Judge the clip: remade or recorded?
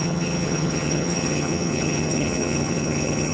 remade